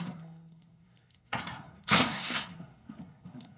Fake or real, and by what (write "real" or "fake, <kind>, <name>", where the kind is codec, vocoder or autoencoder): fake, codec, SNAC